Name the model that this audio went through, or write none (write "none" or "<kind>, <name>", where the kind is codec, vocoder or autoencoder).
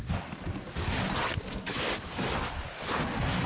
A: none